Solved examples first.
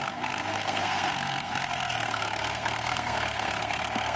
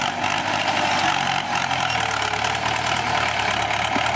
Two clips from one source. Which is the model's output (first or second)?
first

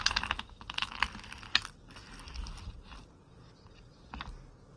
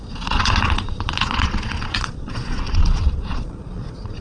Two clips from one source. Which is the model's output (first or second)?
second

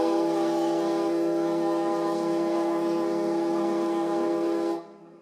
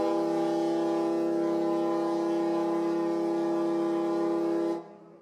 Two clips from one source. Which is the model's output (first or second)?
first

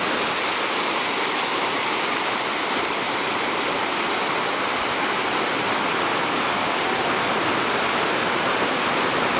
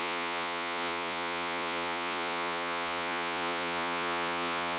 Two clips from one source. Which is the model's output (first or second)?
second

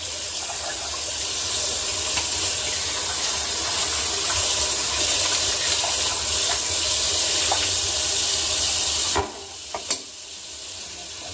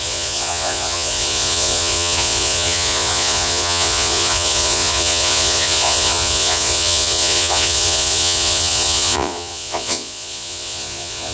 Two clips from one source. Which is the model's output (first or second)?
second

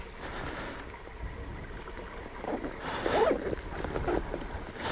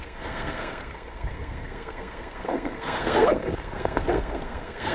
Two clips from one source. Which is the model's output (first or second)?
second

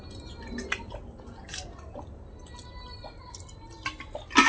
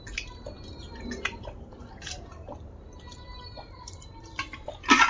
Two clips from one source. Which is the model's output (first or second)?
second